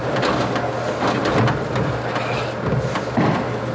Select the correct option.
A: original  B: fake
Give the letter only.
A